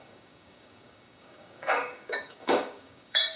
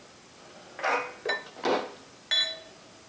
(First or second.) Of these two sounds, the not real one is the first